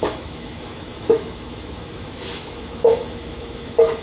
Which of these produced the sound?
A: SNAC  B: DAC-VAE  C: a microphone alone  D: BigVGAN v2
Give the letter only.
B